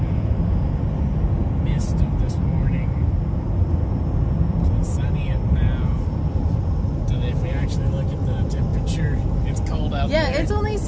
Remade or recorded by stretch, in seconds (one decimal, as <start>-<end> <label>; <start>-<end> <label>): 0.0-10.9 recorded